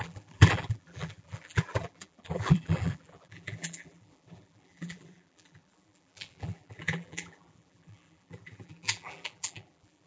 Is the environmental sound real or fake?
fake